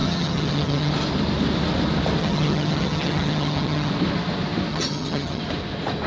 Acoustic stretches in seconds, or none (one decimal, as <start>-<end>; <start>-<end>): 0.9-2.2; 3.9-4.7; 5.4-6.1